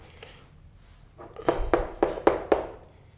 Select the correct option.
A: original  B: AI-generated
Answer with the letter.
A